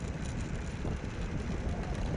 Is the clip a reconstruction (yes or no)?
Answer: no